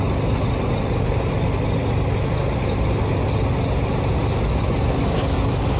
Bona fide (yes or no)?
yes